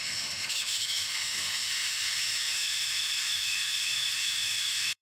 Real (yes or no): no